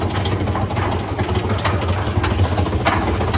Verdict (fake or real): real